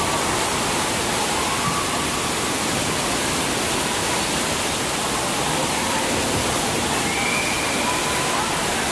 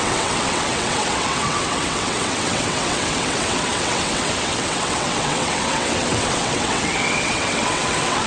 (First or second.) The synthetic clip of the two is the second